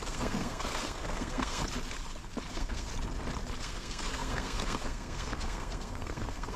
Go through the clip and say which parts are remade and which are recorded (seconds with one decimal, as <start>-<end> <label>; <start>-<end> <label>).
0.0-1.6 remade; 1.6-2.5 recorded; 2.5-2.9 remade; 2.9-3.6 recorded; 3.6-6.6 remade